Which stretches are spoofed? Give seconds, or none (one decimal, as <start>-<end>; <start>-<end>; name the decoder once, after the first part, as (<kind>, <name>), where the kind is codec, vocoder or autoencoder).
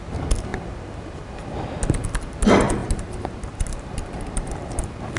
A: 0.5-1.1 (vocoder, BigVGAN v2); 2.8-4.8